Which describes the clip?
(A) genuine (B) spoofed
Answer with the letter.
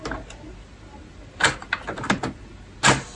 A